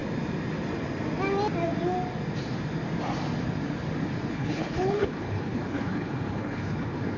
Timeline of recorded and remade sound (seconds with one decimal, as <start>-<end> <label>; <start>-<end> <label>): 0.0-4.3 recorded; 4.3-7.2 remade